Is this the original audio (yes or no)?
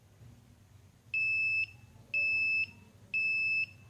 yes